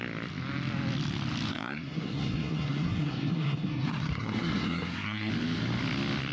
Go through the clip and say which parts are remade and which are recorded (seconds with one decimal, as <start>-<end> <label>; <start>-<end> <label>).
0.0-1.5 recorded; 1.5-5.3 remade; 5.3-6.3 recorded